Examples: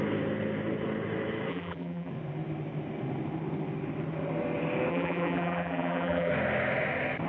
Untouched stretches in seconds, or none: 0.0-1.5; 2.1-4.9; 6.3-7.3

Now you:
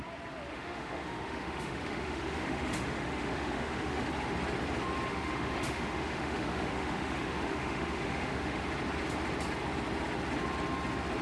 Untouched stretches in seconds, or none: 0.0-0.5; 4.1-5.1; 8.6-11.2

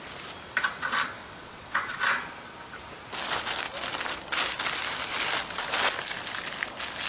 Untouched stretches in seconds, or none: 0.0-1.2; 2.0-7.1